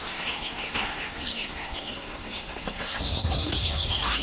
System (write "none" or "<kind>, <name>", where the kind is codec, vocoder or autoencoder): codec, SNAC